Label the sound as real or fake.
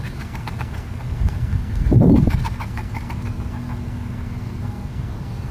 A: fake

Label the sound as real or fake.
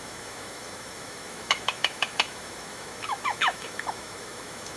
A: fake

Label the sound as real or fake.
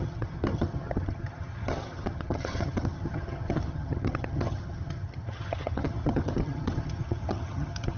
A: fake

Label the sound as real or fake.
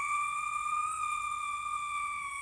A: fake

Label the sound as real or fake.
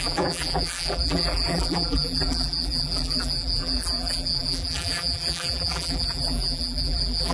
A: fake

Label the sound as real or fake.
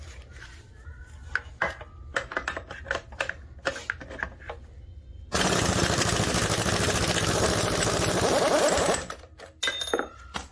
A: real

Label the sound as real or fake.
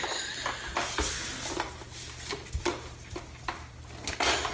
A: real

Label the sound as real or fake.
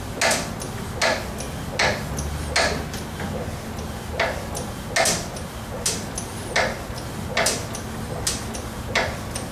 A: real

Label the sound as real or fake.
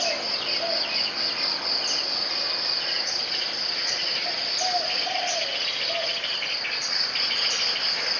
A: real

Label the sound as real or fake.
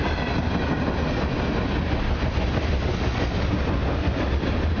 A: real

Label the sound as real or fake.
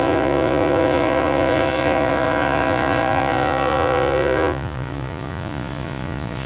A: fake